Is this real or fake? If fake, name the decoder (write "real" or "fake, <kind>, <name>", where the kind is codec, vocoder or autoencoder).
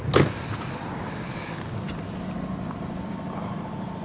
real